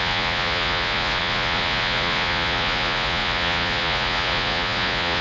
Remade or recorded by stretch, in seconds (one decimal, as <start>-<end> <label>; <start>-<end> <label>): 0.0-5.2 remade